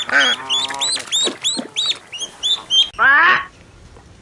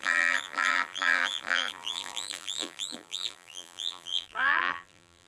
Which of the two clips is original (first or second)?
first